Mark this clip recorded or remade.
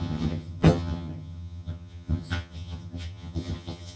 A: remade